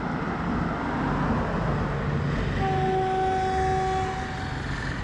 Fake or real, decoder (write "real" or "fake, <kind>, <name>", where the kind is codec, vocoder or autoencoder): real